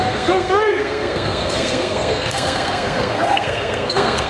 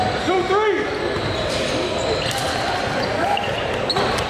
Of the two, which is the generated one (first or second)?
first